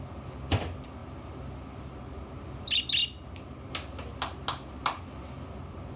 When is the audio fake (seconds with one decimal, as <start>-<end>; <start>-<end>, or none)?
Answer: none